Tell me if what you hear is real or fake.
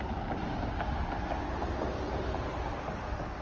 real